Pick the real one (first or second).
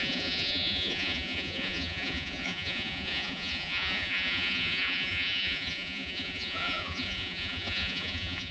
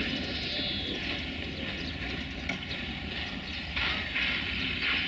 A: second